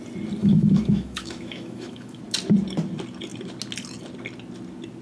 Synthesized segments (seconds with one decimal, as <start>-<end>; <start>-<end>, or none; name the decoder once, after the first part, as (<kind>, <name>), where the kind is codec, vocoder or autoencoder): 0.4-2.2 (autoencoder, DAC-VAE)